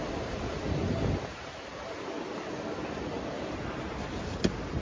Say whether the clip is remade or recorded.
recorded